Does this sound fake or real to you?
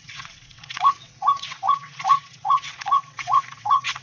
fake